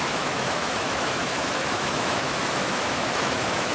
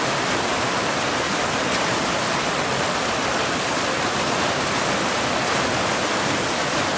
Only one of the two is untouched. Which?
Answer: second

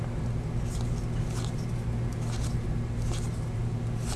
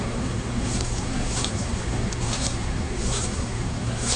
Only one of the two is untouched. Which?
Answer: first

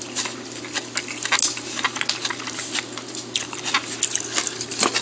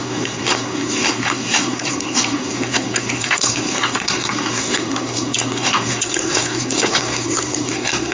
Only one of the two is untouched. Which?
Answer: first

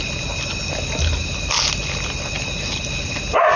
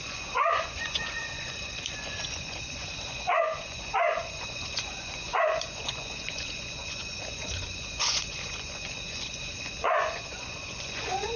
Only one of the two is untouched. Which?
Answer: first